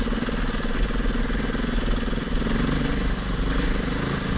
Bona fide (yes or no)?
yes